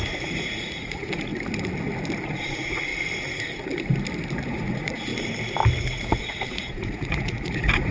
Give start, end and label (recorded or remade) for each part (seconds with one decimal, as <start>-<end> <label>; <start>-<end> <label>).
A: 0.0-1.3 remade; 1.3-2.3 recorded; 2.3-2.9 remade; 2.9-4.5 recorded; 4.5-5.1 remade; 5.1-6.2 recorded; 6.2-7.9 remade